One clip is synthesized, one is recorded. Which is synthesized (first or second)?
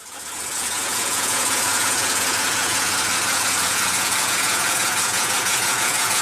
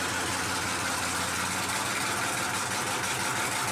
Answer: first